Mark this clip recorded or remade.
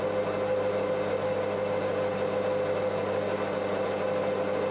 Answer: recorded